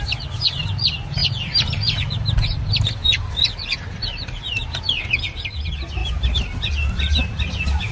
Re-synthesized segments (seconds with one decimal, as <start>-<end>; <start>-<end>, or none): 1.2-5.0; 6.0-6.7

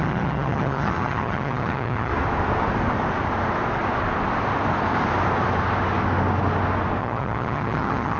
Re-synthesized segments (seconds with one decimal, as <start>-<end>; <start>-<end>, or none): 0.0-2.1; 7.0-8.2

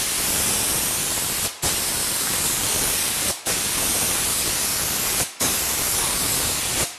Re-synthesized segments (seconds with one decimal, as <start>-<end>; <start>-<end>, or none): 2.0-3.8; 4.3-6.6

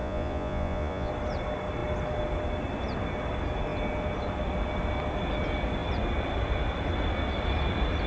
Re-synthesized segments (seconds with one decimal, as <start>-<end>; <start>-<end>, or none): 0.0-1.1

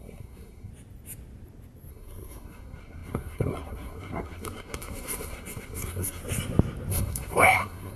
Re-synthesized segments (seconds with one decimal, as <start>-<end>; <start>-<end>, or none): 0.0-0.7; 1.9-6.2; 6.9-8.0